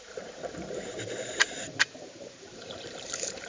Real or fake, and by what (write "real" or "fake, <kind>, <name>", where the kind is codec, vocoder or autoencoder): fake, vocoder, BigVGAN v2